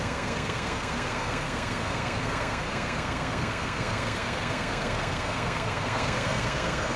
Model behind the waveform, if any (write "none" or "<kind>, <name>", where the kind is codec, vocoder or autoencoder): codec, SNAC